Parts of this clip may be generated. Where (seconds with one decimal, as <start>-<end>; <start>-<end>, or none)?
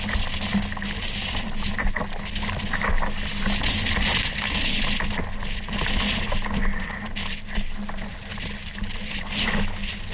none